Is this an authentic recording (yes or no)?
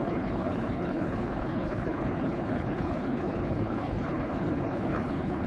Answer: no